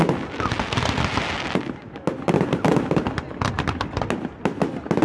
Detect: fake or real real